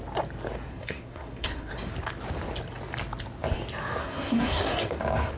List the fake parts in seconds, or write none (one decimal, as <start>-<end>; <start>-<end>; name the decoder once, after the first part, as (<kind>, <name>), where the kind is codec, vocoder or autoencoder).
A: 0.7-1.7 (codec, SNAC); 4.0-5.0